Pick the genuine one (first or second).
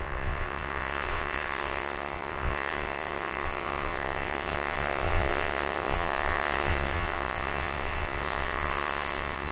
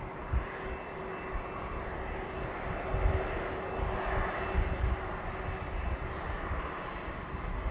second